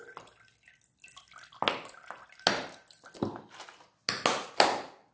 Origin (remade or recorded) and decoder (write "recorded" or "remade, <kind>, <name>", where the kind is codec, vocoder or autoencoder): recorded